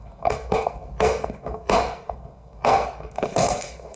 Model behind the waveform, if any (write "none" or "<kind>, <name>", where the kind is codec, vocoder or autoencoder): codec, SNAC